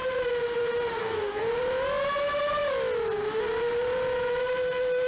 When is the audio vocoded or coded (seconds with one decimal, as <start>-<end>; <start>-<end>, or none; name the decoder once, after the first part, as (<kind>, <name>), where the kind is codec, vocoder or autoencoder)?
1.0-1.5 (codec, DAC)